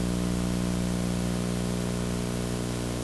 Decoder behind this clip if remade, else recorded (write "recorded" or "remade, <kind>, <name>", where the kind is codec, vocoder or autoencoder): recorded